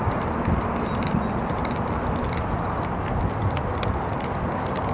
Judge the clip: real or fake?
real